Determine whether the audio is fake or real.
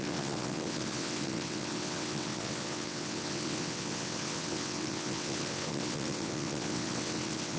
fake